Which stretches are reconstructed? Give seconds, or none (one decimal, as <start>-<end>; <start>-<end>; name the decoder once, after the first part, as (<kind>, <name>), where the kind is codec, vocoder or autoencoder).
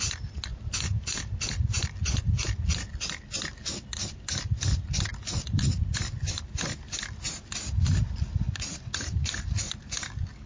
none